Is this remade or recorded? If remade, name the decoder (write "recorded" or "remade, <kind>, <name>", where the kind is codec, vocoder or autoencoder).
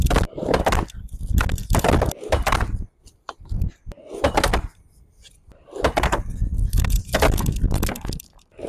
recorded